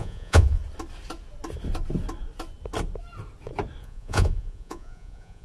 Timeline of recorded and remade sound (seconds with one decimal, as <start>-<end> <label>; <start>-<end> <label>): 0.0-0.6 remade; 0.6-3.8 recorded; 3.8-5.4 remade